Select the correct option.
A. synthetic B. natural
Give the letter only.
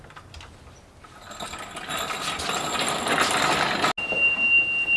B